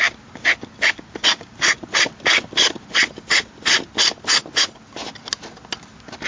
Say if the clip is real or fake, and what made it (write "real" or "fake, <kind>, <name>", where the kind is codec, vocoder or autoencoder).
real